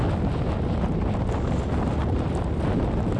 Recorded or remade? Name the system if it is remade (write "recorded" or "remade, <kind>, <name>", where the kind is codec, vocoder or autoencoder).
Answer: recorded